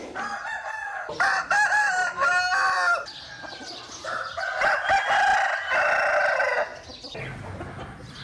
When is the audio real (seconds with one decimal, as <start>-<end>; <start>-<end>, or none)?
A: 0.0-8.2